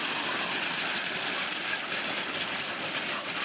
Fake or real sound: real